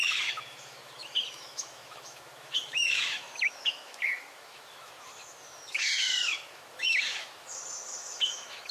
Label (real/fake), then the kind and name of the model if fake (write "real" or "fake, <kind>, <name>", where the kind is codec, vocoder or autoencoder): fake, autoencoder, DAC-VAE